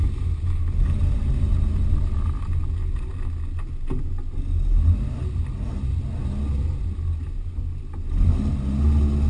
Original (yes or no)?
yes